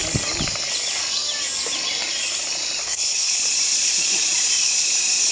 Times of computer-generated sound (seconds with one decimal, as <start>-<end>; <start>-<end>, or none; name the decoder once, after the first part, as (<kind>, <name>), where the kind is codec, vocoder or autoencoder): 2.8-3.3 (codec, HILCodec)